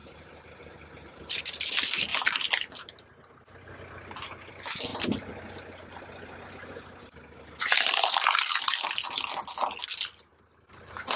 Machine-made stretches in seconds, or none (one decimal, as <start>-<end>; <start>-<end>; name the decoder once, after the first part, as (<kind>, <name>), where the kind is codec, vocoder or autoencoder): 0.0-1.4 (vocoder, BigVGAN v2); 4.9-7.6